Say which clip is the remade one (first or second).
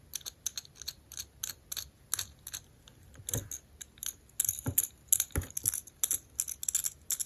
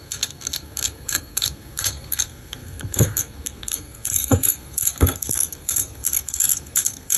second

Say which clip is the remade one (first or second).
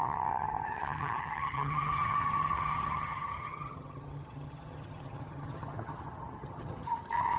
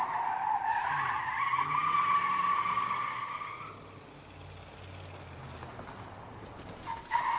first